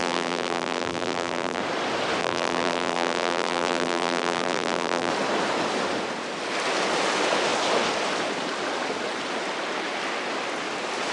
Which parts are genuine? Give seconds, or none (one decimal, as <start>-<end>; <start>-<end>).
1.6-2.2; 5.1-11.1